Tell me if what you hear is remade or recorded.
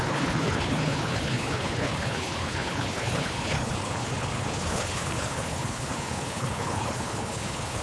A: remade